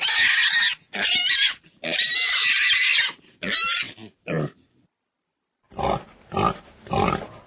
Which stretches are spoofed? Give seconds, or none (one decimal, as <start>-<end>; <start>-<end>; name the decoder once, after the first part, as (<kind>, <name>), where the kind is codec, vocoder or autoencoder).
none